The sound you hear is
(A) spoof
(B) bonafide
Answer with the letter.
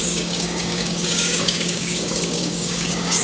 A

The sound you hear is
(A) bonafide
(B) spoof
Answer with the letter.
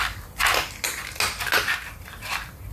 A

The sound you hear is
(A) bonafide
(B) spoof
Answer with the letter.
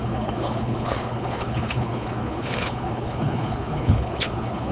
B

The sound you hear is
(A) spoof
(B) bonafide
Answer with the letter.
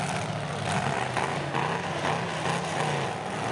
B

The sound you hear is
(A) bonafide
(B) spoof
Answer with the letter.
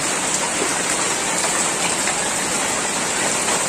A